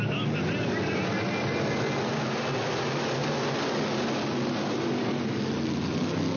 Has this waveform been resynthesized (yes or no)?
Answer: no